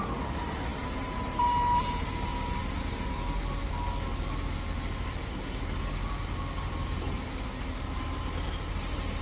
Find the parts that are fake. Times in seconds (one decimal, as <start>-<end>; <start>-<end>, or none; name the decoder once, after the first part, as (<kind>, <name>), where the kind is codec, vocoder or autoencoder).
none